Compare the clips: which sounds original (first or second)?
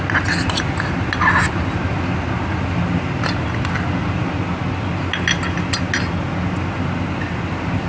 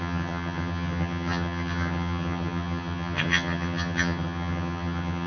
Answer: first